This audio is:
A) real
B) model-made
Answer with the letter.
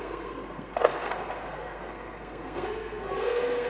B